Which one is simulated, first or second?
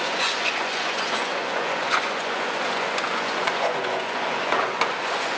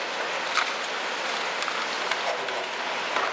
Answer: first